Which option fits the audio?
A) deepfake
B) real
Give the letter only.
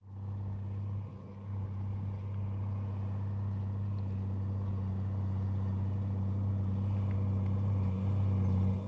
B